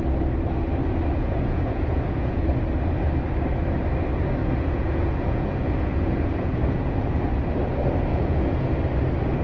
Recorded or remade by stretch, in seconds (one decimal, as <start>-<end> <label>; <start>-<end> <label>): 0.0-1.1 recorded; 1.1-2.5 remade; 2.5-4.4 recorded; 4.4-7.2 remade; 7.2-8.1 recorded; 8.1-8.7 remade; 8.7-9.4 recorded